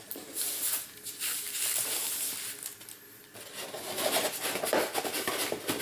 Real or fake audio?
real